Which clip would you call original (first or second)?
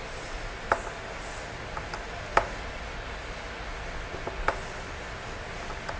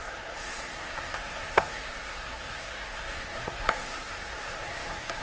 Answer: first